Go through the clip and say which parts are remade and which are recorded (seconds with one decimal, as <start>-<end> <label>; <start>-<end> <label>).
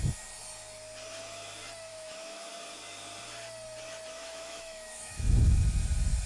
0.0-1.9 recorded; 1.9-2.5 remade; 2.5-4.2 recorded; 4.2-5.6 remade; 5.6-6.3 recorded